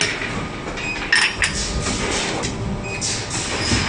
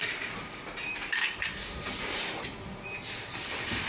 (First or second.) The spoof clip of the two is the second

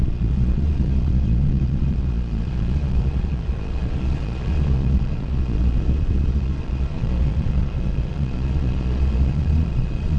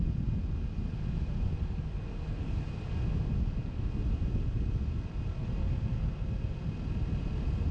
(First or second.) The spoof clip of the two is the first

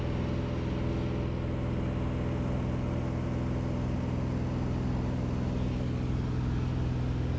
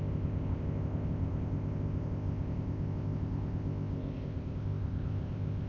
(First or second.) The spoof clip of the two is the second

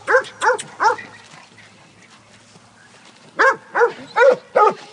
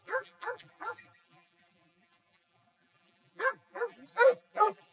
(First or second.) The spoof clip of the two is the second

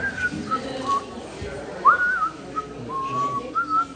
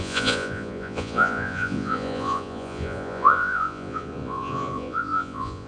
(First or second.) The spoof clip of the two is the second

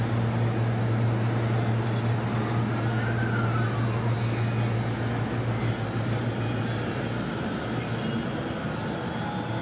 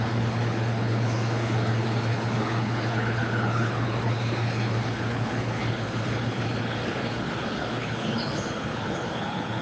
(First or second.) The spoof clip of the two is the second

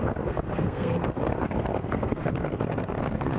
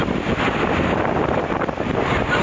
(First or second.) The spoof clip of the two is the first